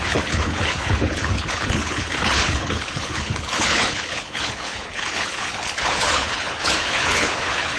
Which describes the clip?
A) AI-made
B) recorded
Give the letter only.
A